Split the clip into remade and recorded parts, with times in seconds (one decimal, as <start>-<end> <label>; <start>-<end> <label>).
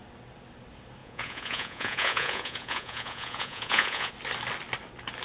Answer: 0.0-1.0 recorded; 1.0-4.1 remade; 4.1-5.2 recorded